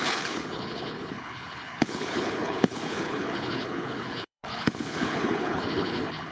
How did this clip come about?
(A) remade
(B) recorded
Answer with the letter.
A